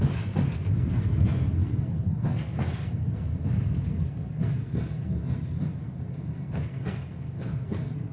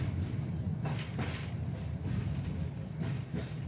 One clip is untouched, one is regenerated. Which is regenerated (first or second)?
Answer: first